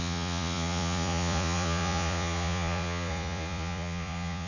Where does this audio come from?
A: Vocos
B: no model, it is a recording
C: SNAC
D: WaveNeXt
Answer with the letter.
A